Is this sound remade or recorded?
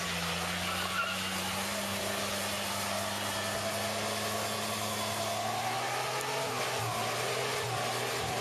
recorded